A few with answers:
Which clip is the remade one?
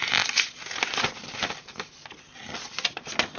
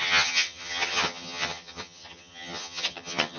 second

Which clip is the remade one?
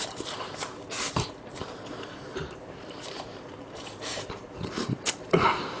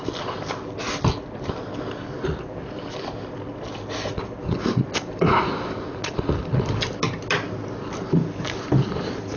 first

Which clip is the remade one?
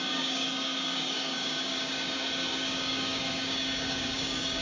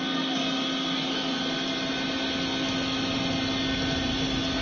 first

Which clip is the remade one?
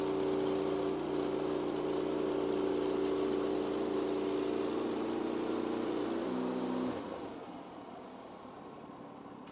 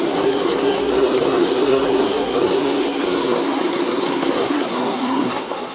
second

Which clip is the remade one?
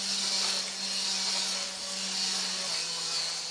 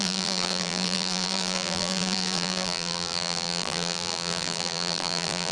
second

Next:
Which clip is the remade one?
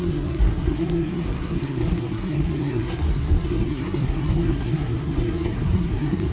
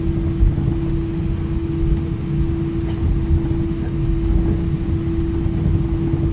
first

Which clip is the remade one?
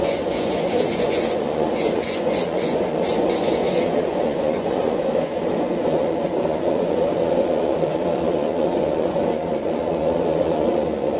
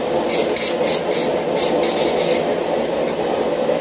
first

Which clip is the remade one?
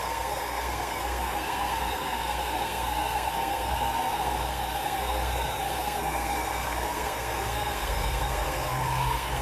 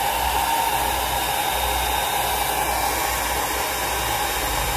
first